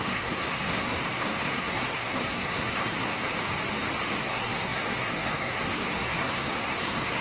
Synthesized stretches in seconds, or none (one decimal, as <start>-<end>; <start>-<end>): 0.0-3.2; 4.1-7.2